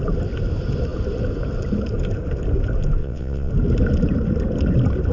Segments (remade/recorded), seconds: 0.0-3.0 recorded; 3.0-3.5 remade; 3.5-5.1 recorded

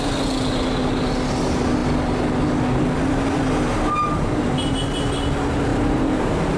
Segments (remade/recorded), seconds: 0.0-5.7 recorded; 5.7-6.6 remade

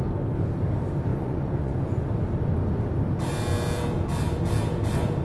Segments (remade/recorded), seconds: 0.0-1.1 recorded; 1.1-2.0 remade; 2.0-5.2 recorded

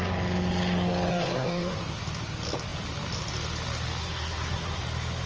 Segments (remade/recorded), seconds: 0.0-1.1 recorded; 1.1-1.8 remade; 1.8-4.0 recorded; 4.0-4.8 remade; 4.8-5.3 recorded

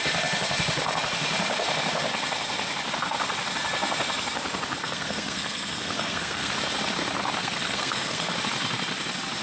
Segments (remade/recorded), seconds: 0.0-4.8 recorded; 4.8-6.5 remade; 6.5-7.4 recorded; 7.4-8.3 remade; 8.3-9.4 recorded